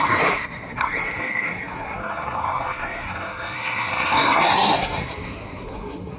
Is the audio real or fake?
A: fake